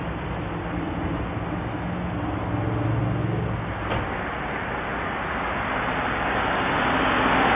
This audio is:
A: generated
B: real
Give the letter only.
B